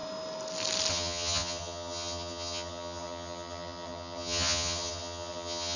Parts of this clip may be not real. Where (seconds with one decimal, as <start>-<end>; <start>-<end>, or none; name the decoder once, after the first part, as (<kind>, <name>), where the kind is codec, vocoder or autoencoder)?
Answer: 0.9-5.8 (vocoder, HiFi-GAN)